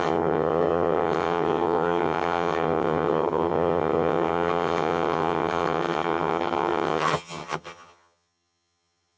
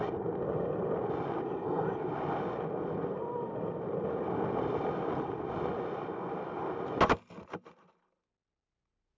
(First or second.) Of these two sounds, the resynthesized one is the first